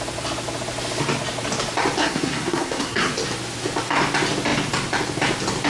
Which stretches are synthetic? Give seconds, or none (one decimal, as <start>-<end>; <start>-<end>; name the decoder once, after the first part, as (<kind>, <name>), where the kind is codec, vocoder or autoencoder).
2.0-3.1 (codec, SNAC)